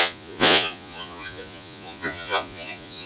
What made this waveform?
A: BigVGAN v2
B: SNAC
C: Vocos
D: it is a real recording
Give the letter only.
C